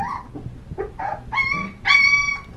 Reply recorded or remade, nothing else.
recorded